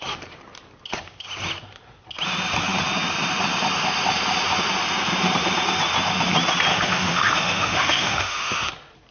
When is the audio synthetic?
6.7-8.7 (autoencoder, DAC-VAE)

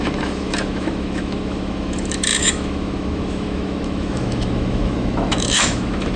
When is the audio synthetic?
0.0-6.2 (autoencoder, DAC-VAE)

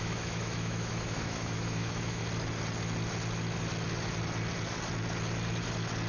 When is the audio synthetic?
0.0-2.2 (autoencoder, DAC-VAE)

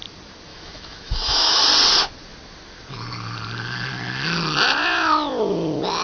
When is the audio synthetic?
0.5-1.6 (autoencoder, DAC-VAE)

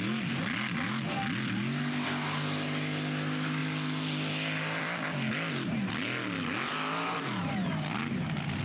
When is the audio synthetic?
none